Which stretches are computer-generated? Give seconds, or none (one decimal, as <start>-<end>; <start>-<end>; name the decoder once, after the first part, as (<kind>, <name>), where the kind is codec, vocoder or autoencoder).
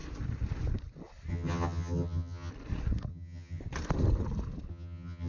1.3-2.5 (vocoder, HiFi-GAN); 3.1-3.6; 4.7-5.3